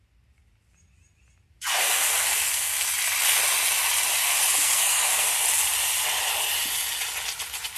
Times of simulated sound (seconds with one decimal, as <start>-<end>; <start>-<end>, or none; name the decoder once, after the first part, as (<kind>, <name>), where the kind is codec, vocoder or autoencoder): 1.8-2.9 (codec, SNAC); 4.2-5.3